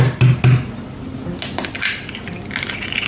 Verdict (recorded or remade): recorded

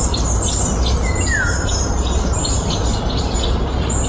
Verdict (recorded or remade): recorded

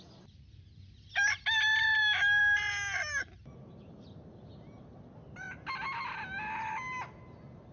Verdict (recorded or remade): recorded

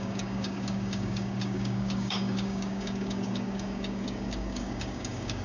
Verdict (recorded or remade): remade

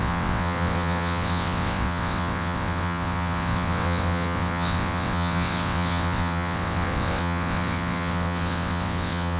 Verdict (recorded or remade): remade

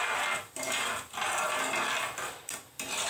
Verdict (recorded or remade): recorded